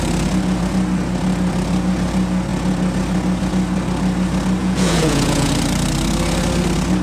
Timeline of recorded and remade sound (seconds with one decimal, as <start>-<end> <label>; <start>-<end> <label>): 0.0-4.6 recorded; 4.6-5.5 remade; 5.5-7.0 recorded